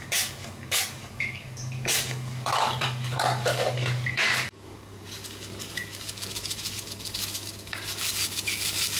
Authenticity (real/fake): fake